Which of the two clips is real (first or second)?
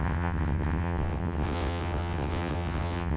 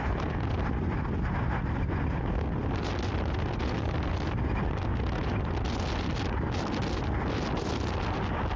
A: second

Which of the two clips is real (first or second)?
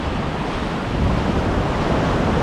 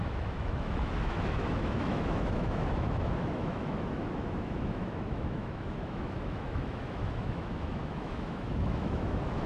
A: first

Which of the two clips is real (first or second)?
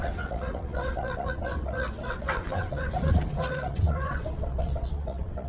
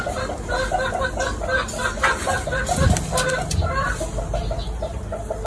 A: second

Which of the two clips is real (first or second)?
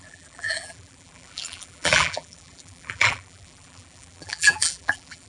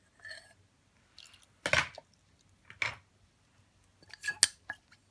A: second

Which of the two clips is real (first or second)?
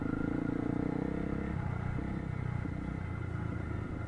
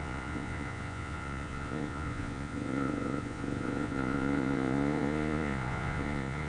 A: first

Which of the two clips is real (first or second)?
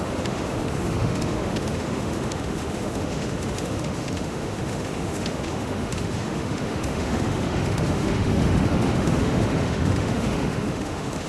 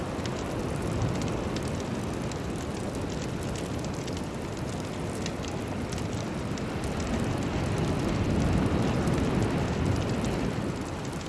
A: second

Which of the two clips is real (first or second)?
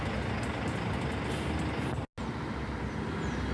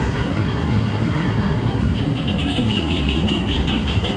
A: first